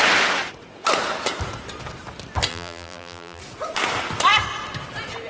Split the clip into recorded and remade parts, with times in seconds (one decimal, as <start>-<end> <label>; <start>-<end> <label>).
0.0-2.5 recorded; 2.5-3.4 remade; 3.4-5.3 recorded